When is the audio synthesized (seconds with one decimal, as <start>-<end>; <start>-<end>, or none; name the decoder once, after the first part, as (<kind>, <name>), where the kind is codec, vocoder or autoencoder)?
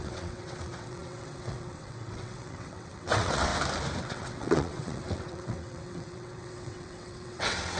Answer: 0.0-3.5 (vocoder, WaveNeXt); 4.0-7.8